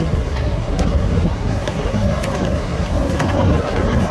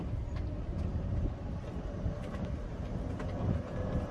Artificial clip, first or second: first